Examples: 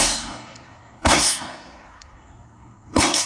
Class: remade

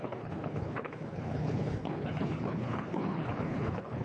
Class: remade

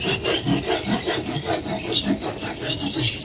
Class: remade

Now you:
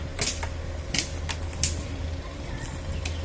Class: recorded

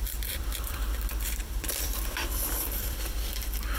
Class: remade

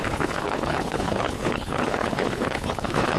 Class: remade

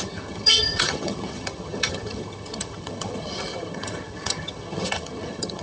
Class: remade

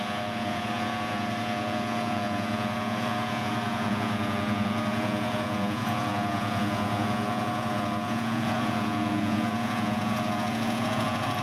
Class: remade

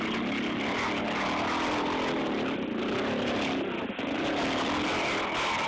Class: recorded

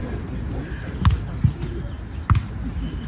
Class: recorded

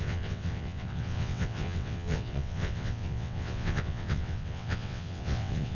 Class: remade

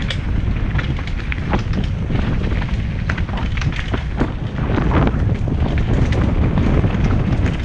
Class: recorded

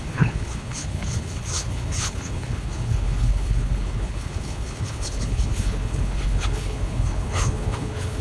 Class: remade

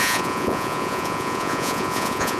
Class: remade